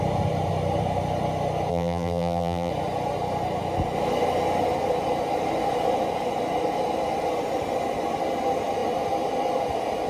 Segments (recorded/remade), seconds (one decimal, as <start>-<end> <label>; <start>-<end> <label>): 0.0-1.7 recorded; 1.7-2.7 remade; 2.7-10.1 recorded